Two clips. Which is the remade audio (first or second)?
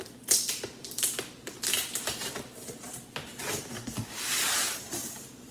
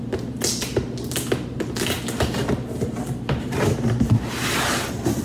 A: first